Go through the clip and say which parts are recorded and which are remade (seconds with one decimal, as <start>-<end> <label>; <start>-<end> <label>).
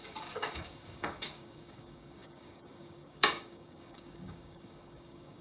0.0-5.4 remade